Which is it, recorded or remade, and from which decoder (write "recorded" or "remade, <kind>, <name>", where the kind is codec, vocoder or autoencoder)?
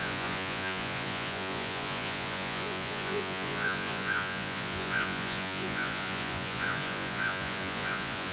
remade, vocoder, Vocos